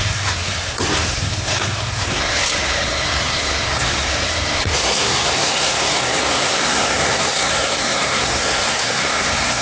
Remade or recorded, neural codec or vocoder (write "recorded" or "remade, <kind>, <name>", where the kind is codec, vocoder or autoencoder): remade, codec, SNAC